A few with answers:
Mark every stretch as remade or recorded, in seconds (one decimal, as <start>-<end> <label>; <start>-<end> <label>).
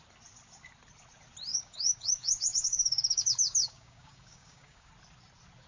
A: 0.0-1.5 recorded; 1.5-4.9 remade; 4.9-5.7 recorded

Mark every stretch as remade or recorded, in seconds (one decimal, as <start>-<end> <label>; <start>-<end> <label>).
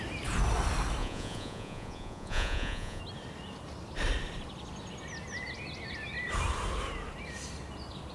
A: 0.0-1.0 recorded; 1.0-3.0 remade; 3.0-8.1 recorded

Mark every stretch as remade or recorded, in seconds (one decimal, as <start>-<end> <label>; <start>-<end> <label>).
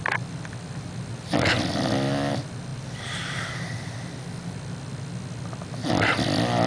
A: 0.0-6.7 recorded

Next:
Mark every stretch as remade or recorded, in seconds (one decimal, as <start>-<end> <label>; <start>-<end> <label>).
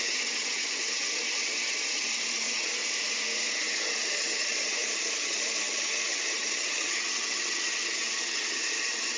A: 0.0-2.8 remade; 2.8-3.5 recorded; 3.5-9.2 remade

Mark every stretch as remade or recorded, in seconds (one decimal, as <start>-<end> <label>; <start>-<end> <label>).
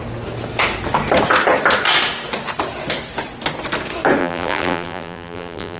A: 0.0-4.2 recorded; 4.2-5.8 remade